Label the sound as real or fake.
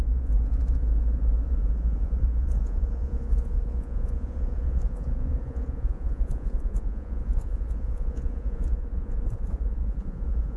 fake